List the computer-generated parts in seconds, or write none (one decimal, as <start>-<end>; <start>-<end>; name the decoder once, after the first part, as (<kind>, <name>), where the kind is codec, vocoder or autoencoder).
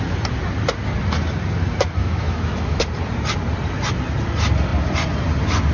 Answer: 2.0-2.8 (autoencoder, DAC-VAE)